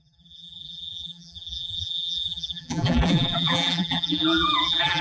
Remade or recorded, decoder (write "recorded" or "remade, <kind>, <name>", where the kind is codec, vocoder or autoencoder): remade, vocoder, BigVGAN v2